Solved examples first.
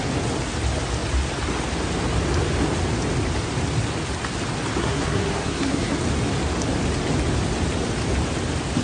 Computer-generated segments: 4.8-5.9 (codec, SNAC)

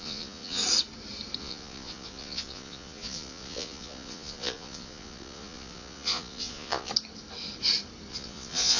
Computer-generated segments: 0.0-0.6 (vocoder, Vocos); 1.4-6.9; 8.1-8.8

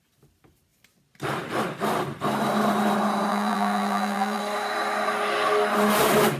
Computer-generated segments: 3.3-4.4 (vocoder, BigVGAN v2)

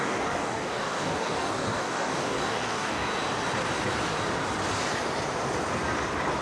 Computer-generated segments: 0.0-3.1 (codec, DAC)

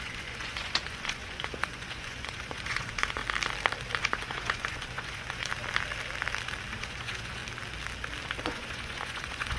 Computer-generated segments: 0.0-3.2 (vocoder, Vocos); 4.0-5.5; 6.8-7.4; 8.4-9.6

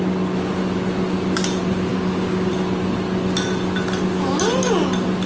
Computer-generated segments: 1.9-2.5 (codec, DAC)